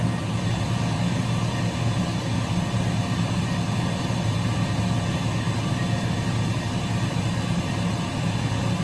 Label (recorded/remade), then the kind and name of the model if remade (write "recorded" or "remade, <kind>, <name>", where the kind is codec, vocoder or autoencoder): recorded